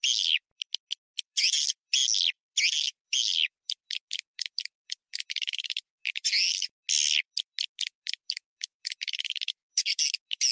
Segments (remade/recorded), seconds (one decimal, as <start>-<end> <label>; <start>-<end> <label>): 0.0-10.5 recorded